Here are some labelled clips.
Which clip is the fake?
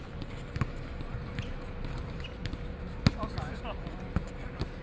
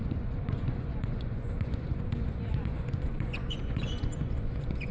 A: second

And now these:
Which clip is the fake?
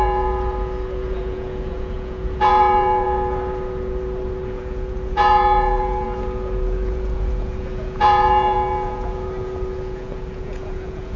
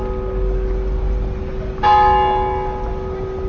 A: first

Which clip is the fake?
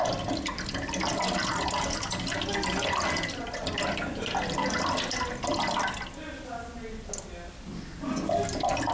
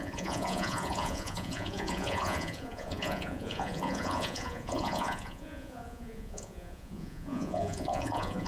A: second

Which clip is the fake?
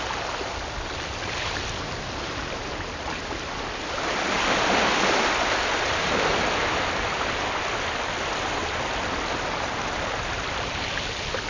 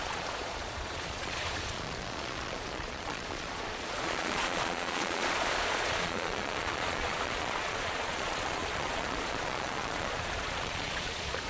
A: second